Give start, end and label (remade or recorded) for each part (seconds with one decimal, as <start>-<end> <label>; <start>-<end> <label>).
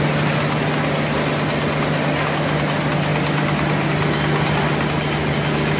0.0-5.8 recorded